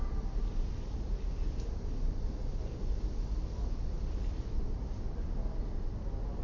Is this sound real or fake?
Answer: real